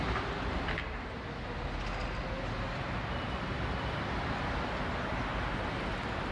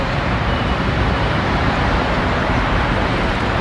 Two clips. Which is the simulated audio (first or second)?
second